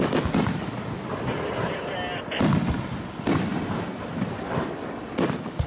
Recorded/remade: recorded